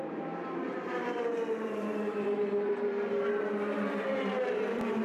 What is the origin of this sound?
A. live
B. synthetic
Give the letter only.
B